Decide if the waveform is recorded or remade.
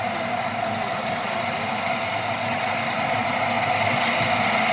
recorded